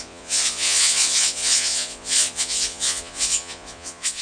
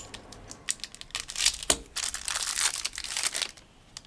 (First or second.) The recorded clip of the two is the second